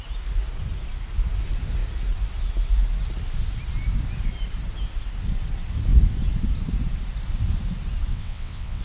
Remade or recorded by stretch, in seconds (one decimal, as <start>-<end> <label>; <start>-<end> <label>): 0.0-8.1 recorded; 8.1-8.8 remade